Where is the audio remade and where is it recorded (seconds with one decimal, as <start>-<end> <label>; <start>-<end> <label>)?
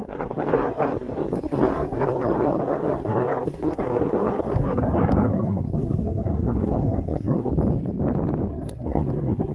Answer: 0.0-7.5 remade; 7.5-8.5 recorded; 8.5-9.5 remade